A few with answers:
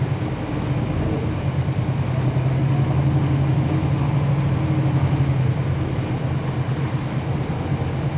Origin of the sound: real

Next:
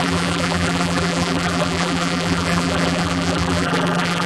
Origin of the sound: fake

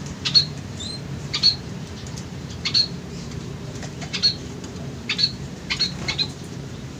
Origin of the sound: fake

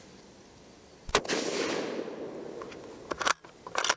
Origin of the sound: real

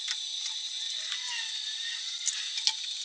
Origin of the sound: real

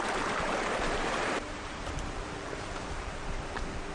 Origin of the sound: fake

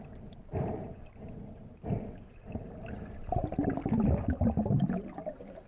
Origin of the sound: fake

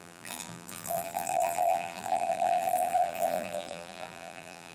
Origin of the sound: fake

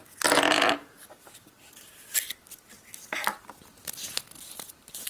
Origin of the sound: real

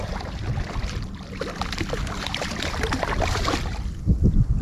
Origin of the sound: fake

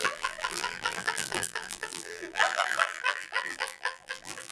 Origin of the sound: fake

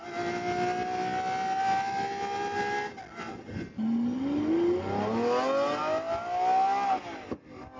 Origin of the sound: real